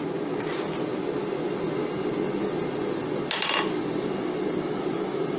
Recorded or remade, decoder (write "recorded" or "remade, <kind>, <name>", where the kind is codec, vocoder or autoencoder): recorded